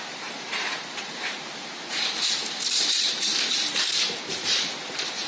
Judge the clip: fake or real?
fake